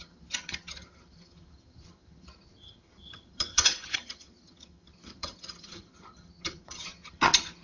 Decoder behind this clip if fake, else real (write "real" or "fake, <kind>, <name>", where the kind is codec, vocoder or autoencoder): fake, vocoder, HiFi-GAN